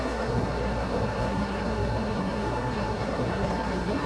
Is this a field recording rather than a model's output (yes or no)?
no